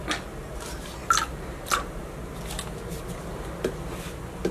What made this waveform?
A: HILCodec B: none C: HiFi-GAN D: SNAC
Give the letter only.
B